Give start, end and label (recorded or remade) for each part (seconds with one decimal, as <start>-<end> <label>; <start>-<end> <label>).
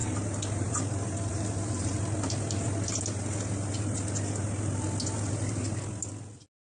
0.0-2.0 remade; 2.0-6.8 recorded